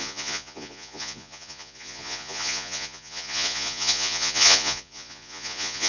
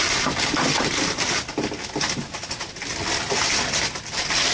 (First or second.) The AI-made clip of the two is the first